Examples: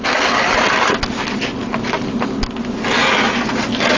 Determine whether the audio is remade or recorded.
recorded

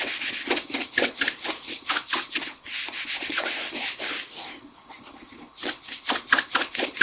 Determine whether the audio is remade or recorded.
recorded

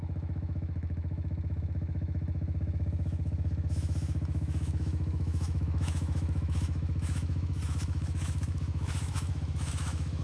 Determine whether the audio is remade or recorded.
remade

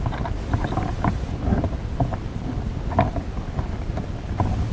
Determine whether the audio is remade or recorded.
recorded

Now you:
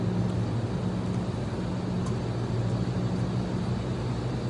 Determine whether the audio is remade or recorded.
recorded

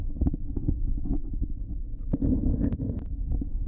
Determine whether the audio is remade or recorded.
recorded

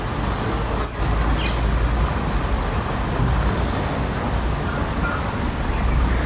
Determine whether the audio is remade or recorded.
recorded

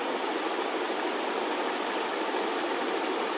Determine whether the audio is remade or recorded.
recorded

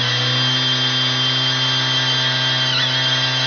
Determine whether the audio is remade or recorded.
recorded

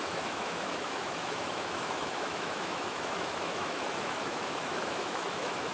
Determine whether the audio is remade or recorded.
remade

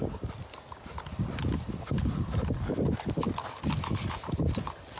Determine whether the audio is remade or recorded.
recorded